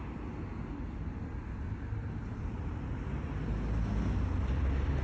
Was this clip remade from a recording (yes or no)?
no